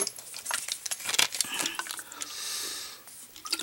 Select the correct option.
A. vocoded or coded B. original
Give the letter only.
B